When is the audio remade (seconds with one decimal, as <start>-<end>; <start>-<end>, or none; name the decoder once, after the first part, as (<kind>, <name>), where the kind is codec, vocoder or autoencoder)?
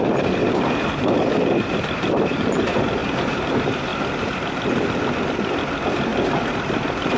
0.0-3.9 (vocoder, BigVGAN v2); 5.3-6.1